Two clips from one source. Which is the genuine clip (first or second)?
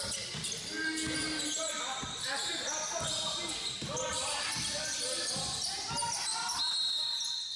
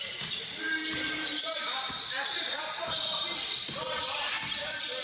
first